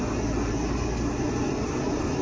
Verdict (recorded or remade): recorded